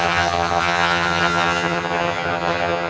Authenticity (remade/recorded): remade